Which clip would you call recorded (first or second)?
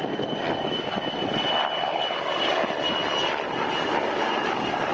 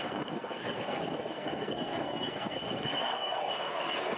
first